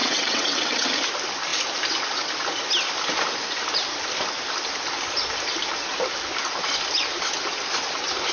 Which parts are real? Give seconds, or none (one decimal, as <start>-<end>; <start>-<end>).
0.9-8.3